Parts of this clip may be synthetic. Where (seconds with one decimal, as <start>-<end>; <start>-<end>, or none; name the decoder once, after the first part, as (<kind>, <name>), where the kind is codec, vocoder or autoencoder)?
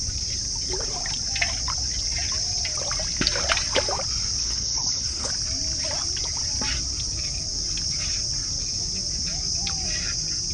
4.4-5.3 (codec, HILCodec)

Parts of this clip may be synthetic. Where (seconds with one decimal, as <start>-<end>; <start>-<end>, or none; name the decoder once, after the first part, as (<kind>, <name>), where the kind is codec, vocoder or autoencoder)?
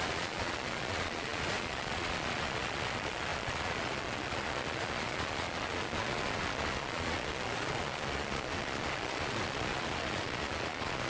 0.0-11.1 (vocoder, Vocos)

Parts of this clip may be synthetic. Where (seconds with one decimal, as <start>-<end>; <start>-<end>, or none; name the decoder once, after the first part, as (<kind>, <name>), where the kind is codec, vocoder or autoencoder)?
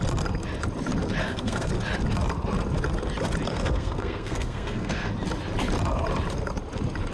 1.2-1.7 (codec, SNAC); 3.5-5.1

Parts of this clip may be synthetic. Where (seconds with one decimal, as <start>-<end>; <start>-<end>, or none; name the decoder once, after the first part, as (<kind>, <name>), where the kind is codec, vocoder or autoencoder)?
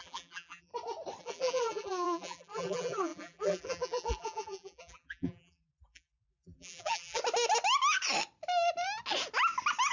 0.0-0.7 (vocoder, BigVGAN v2); 1.2-7.2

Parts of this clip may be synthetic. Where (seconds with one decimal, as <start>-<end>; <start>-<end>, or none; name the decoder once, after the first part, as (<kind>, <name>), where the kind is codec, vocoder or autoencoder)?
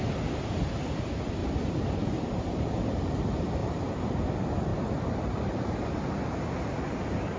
1.4-3.2 (vocoder, BigVGAN v2); 3.6-4.2; 4.7-7.4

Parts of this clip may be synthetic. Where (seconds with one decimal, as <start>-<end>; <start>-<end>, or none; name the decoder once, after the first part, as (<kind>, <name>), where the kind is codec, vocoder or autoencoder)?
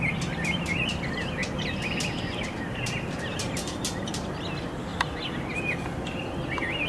none